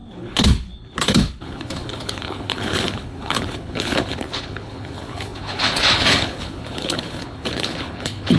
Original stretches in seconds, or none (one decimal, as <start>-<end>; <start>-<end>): none